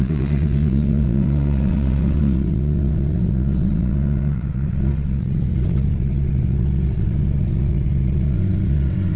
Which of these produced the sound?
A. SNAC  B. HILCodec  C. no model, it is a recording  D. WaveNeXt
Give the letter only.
D